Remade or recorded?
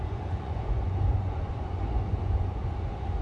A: remade